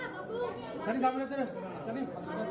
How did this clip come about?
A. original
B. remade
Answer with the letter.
A